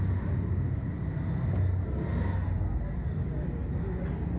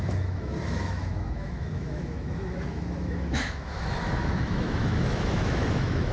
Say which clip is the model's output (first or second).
second